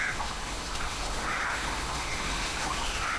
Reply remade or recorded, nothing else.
remade